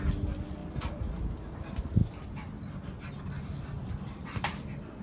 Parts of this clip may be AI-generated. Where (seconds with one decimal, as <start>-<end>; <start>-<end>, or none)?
none